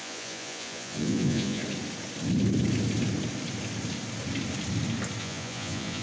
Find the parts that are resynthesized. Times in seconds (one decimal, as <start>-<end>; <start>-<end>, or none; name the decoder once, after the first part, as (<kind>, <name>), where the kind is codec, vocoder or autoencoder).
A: 0.0-1.6 (vocoder, Vocos); 5.2-6.0